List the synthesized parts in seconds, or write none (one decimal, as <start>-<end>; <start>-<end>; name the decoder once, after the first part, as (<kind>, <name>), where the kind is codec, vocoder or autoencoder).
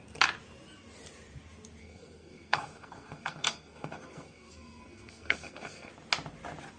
1.8-5.9 (codec, SNAC)